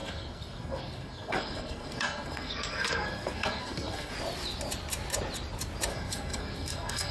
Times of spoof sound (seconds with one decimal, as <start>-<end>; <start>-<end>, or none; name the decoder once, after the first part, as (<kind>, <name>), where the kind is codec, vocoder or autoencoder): 0.0-4.1 (codec, SNAC); 5.9-7.1